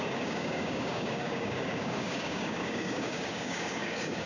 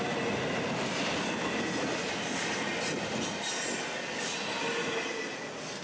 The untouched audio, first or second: second